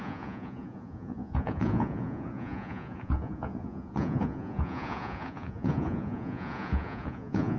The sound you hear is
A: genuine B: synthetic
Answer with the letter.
B